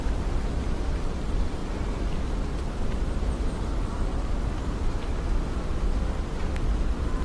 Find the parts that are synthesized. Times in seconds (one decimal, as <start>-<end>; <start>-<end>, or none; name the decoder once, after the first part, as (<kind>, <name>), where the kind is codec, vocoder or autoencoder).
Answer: 0.0-1.6 (vocoder, BigVGAN v2); 3.3-7.2